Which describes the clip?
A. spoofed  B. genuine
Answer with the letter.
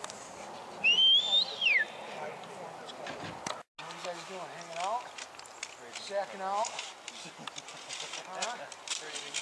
B